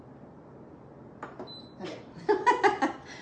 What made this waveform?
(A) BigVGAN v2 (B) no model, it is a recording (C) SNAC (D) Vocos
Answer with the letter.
B